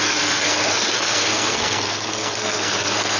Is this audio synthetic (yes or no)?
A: yes